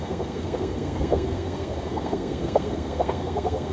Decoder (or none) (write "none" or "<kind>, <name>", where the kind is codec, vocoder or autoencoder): codec, SNAC